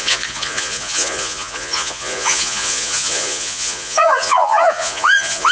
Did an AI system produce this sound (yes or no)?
yes